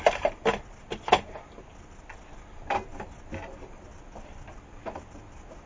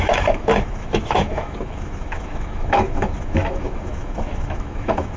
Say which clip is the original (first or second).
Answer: first